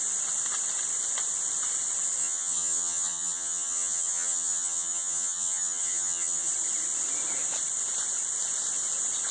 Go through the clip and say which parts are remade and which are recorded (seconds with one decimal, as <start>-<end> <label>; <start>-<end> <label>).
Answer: 0.0-2.2 recorded; 2.2-6.5 remade; 6.5-9.3 recorded